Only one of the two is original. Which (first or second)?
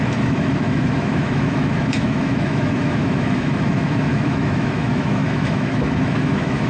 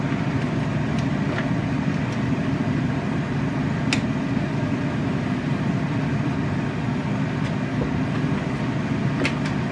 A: second